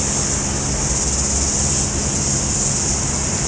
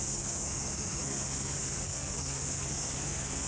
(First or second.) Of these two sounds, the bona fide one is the first